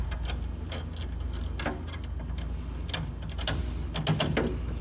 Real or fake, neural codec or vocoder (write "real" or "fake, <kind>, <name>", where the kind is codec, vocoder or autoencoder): real